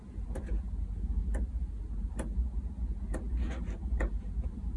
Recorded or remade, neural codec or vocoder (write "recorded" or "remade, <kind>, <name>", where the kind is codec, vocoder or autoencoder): recorded